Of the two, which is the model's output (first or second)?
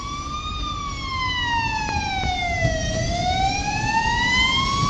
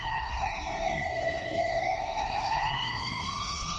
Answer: second